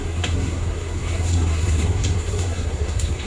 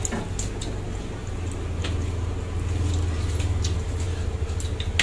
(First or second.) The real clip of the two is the second